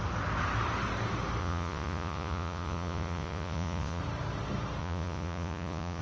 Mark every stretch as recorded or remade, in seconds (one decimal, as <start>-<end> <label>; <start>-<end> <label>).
0.0-1.4 recorded; 1.4-4.0 remade; 4.0-4.8 recorded; 4.8-6.0 remade